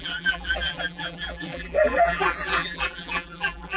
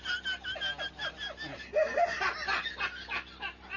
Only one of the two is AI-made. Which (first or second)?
first